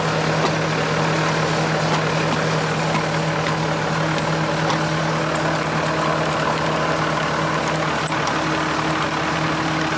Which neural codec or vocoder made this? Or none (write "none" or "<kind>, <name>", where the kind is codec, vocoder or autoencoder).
none